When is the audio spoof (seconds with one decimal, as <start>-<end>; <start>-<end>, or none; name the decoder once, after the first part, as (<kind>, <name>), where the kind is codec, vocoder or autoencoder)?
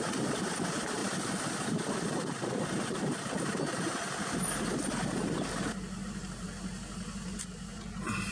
none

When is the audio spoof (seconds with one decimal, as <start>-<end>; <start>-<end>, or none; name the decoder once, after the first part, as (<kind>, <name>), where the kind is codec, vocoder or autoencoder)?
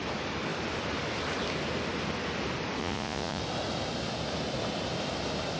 2.8-3.4 (vocoder, Vocos)